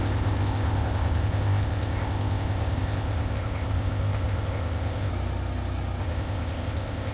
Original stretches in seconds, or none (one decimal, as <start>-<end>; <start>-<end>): 5.1-6.0